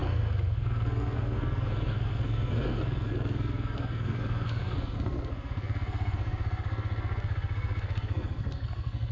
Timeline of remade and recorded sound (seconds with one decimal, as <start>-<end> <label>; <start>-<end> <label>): 0.0-9.1 remade